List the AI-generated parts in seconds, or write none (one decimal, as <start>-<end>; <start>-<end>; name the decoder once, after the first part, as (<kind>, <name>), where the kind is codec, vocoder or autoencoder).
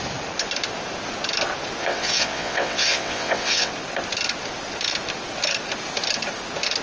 1.8-3.7 (vocoder, WaveNeXt)